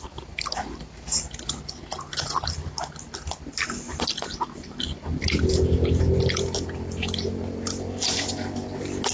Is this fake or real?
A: real